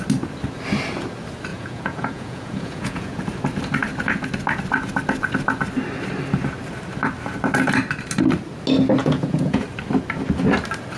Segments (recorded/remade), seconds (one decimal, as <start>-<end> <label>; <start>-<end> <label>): 0.0-1.5 recorded; 1.5-3.2 remade; 3.2-9.0 recorded; 9.0-9.6 remade; 9.6-11.0 recorded